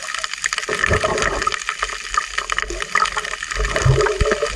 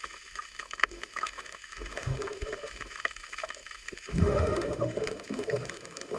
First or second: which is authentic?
first